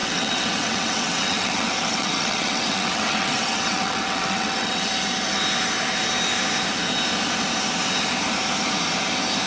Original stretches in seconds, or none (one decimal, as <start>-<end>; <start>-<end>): 4.9-9.5